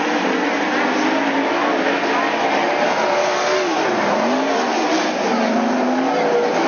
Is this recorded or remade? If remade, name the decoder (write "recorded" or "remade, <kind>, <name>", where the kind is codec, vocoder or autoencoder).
recorded